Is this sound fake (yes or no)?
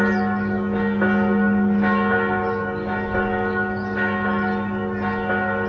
no